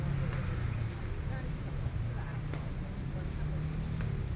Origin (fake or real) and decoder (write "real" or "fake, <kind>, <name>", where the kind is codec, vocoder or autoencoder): real